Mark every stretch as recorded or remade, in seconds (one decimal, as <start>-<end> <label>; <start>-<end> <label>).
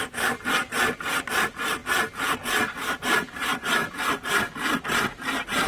0.0-0.7 remade; 0.7-1.3 recorded; 1.3-1.8 remade; 1.8-2.8 recorded; 2.8-5.7 remade